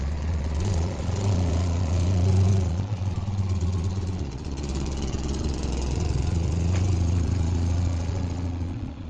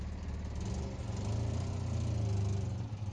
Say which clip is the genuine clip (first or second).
second